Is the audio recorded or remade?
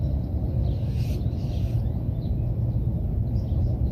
recorded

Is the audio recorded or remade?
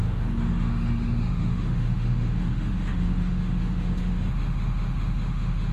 remade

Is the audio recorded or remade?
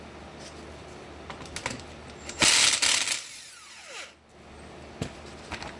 recorded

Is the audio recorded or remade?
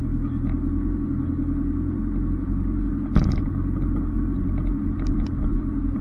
recorded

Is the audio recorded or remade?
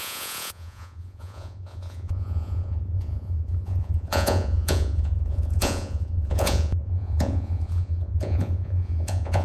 remade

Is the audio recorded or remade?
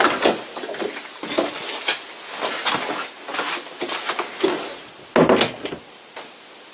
recorded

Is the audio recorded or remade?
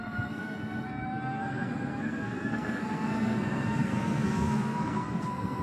remade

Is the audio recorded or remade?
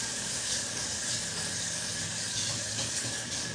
remade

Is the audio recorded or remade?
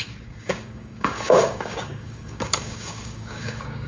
remade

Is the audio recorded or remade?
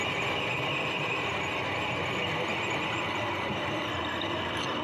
remade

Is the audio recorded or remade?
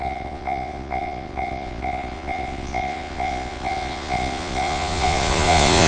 remade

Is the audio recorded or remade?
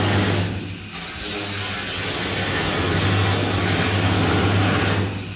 recorded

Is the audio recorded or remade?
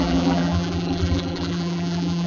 remade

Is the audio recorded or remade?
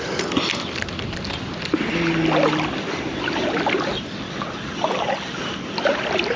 recorded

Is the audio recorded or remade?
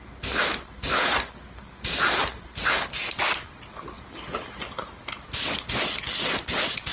recorded